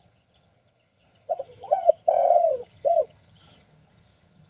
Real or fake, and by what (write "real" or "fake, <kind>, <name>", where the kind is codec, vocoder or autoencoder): fake, vocoder, HiFi-GAN